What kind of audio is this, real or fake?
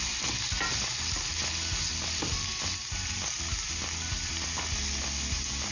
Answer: real